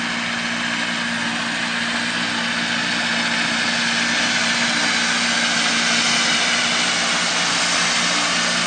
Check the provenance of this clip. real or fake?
real